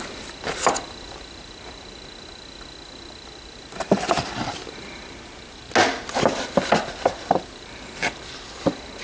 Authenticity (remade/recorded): recorded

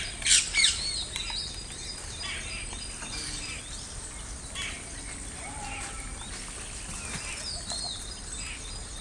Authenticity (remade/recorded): recorded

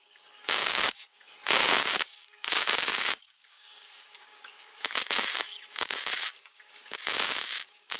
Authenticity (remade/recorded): remade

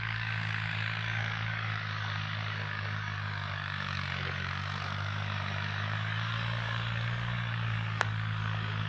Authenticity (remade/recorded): remade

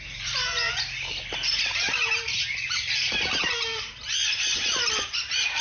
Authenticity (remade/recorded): recorded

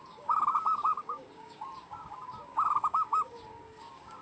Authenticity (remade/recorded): remade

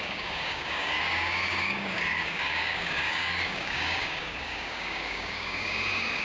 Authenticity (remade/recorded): remade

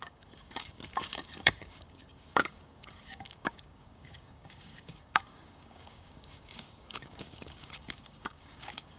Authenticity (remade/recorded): remade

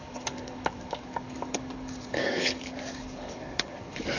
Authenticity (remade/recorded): remade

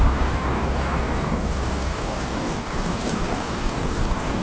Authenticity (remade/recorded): remade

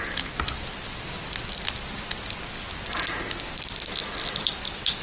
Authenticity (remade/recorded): recorded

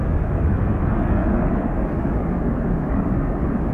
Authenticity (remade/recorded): remade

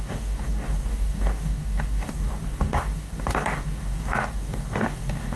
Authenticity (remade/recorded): remade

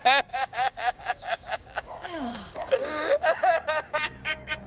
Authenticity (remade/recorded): remade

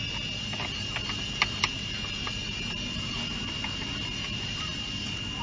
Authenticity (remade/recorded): recorded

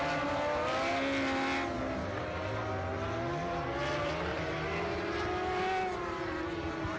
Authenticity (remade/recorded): recorded